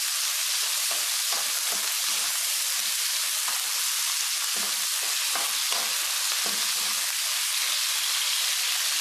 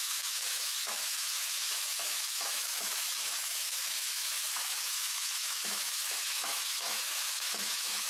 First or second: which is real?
first